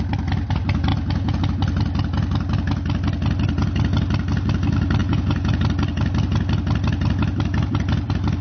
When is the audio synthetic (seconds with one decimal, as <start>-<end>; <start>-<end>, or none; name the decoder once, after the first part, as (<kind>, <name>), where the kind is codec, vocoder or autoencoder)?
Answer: 0.9-1.4 (vocoder, Vocos); 5.0-5.6